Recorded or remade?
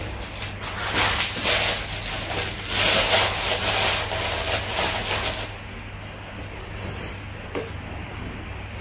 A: recorded